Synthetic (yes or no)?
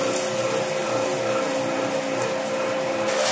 no